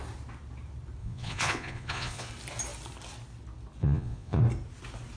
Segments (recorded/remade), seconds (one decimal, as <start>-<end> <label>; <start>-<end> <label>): 0.0-1.0 recorded; 1.0-2.3 remade; 2.3-3.8 recorded; 3.8-4.4 remade; 4.4-5.2 recorded